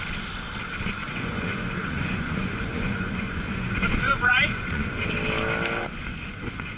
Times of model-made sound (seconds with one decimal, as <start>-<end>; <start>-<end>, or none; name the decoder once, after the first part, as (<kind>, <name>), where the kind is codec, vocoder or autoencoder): 1.0-5.1 (vocoder, Vocos); 5.8-6.8